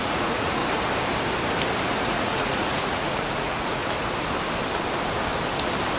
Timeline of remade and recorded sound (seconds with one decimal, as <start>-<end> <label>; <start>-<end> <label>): 0.0-0.6 remade; 0.6-2.0 recorded; 2.0-3.8 remade; 3.8-6.0 recorded